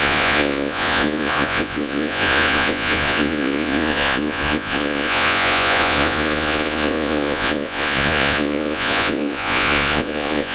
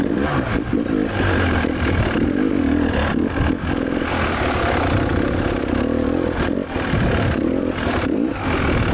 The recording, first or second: second